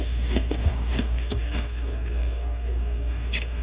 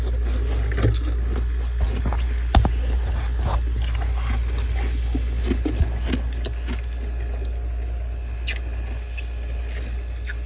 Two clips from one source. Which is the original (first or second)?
second